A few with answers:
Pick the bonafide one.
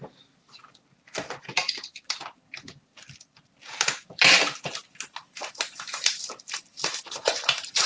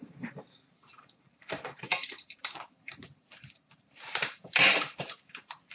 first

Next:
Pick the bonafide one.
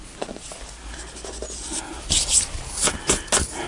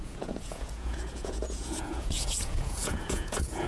first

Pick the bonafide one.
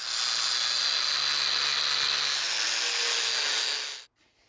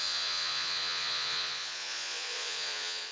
first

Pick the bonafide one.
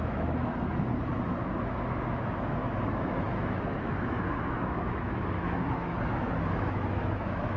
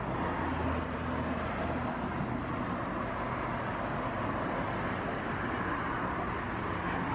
second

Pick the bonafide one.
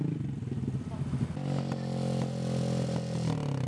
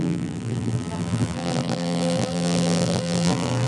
first